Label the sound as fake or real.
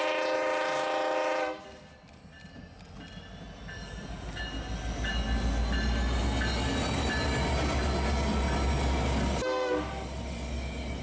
real